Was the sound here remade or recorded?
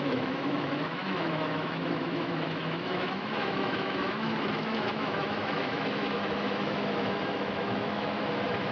remade